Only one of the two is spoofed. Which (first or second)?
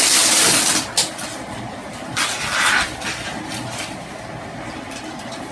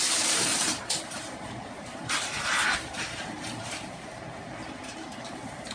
second